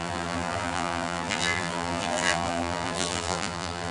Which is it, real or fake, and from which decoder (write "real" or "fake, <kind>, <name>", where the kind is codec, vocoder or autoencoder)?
fake, vocoder, BigVGAN v2